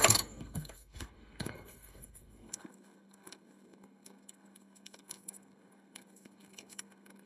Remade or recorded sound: remade